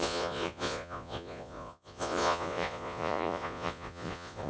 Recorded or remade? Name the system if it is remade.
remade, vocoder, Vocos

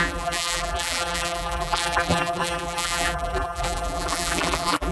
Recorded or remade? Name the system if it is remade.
remade, vocoder, BigVGAN v2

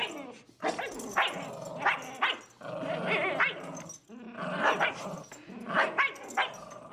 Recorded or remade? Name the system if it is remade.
recorded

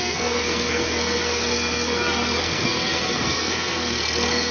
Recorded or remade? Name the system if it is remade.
remade, codec, SNAC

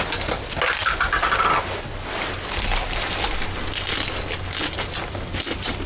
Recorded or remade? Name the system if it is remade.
recorded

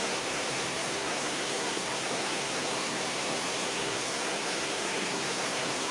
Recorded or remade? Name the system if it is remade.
remade, codec, SNAC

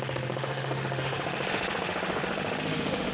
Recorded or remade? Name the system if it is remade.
remade, autoencoder, DAC-VAE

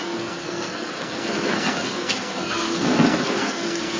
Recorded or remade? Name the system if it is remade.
remade, codec, SNAC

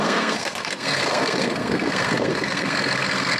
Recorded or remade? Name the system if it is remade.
remade, codec, SNAC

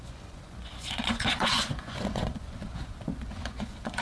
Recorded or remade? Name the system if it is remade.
remade, vocoder, Vocos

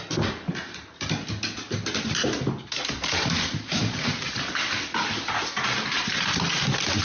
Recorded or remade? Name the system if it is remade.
recorded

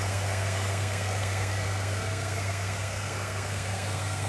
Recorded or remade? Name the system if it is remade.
remade, codec, SNAC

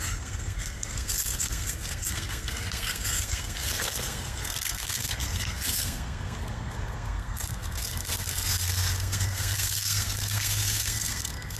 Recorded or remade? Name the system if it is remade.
remade, codec, SNAC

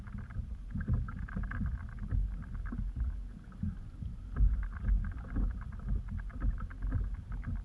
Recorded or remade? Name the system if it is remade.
recorded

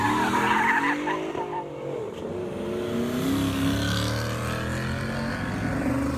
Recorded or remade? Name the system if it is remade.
recorded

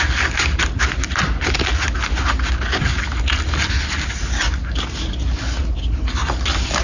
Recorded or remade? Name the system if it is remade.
recorded